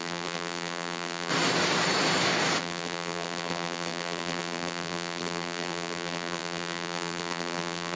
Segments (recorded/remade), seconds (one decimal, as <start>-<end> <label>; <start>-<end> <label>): 0.0-1.3 remade; 1.3-2.6 recorded; 2.6-8.0 remade